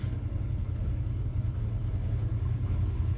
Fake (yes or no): yes